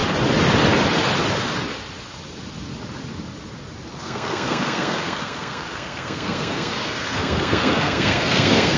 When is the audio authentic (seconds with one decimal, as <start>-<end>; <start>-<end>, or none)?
0.0-3.9